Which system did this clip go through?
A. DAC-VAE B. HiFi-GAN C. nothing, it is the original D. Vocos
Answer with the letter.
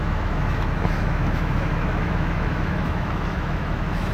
A